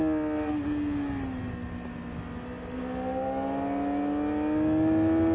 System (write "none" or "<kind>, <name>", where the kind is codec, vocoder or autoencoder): none